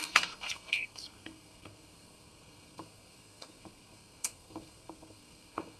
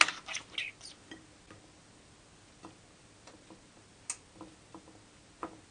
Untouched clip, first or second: second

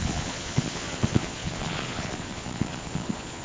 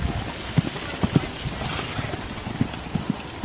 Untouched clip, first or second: second